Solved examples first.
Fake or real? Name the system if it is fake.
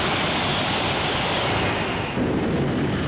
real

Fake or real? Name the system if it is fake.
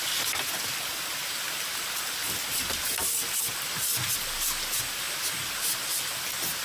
real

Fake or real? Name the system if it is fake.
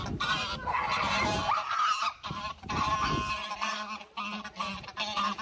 real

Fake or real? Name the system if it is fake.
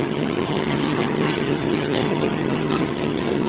fake, vocoder, HiFi-GAN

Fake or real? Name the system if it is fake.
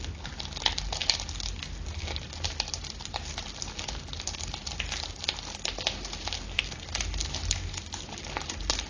real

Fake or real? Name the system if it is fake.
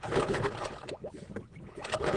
fake, codec, HILCodec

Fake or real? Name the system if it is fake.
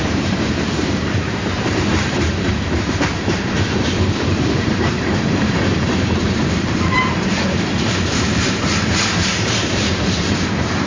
fake, vocoder, BigVGAN v2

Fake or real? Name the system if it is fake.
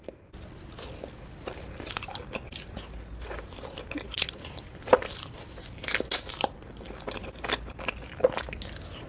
real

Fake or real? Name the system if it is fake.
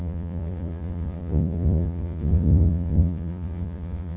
fake, vocoder, Vocos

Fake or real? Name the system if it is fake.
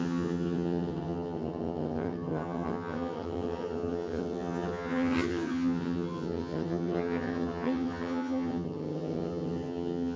fake, vocoder, HiFi-GAN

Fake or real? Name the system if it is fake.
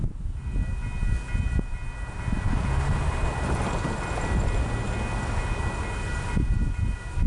real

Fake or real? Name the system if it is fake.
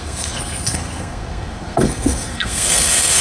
fake, codec, SNAC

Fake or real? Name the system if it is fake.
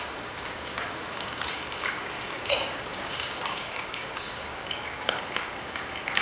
fake, codec, DAC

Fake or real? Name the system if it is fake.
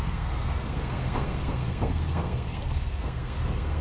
fake, codec, SNAC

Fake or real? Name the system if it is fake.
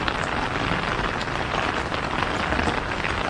real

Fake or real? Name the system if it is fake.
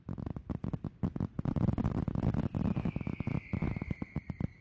real